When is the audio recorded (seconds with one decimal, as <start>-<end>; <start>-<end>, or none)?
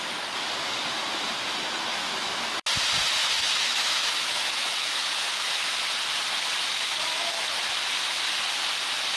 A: 0.0-1.9; 2.7-3.2; 5.6-6.7; 7.6-9.2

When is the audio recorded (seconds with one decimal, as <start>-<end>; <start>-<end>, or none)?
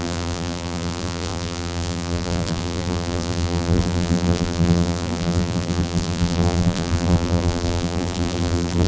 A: none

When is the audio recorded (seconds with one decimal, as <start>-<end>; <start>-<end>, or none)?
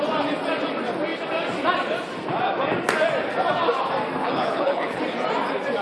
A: 0.0-4.2; 5.0-5.8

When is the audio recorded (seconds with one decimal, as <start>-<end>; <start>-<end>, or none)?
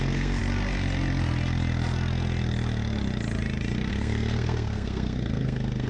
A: 0.4-3.9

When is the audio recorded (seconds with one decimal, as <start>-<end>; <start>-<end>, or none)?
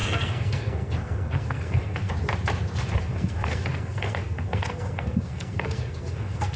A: 2.1-3.0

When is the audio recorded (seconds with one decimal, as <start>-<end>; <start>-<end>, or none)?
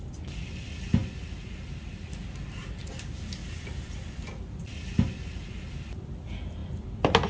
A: 0.0-7.3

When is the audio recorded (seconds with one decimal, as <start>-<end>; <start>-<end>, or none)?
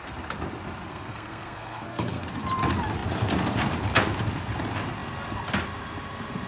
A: 0.0-0.9; 2.2-6.5